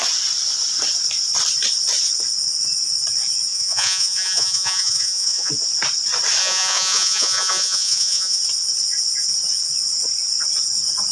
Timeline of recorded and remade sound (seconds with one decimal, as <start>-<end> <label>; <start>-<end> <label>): 0.0-3.5 recorded; 3.5-5.5 remade; 5.5-6.4 recorded; 6.4-8.4 remade; 8.4-11.1 recorded